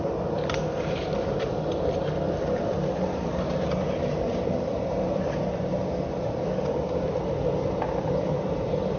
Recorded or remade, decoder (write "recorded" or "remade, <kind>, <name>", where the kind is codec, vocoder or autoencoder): remade, vocoder, BigVGAN v2